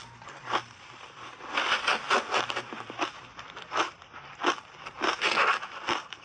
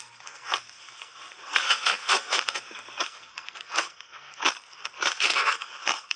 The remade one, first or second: second